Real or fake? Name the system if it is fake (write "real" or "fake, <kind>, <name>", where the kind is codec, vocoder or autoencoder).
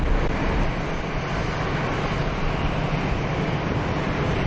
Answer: real